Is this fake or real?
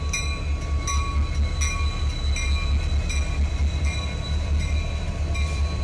real